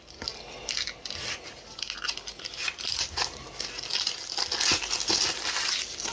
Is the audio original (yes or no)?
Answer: yes